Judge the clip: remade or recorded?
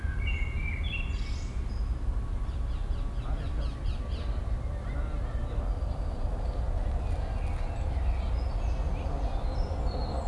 recorded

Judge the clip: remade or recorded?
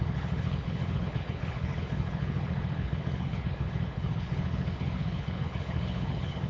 remade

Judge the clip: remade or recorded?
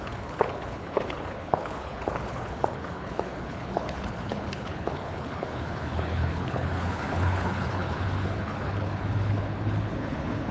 remade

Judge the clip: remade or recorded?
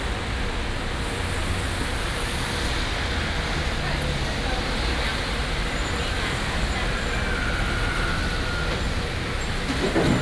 recorded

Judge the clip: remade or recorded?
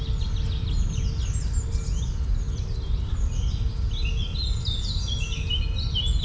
recorded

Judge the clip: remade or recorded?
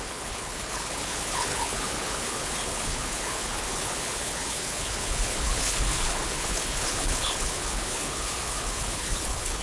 remade